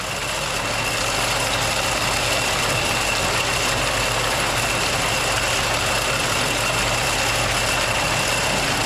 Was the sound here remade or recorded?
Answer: recorded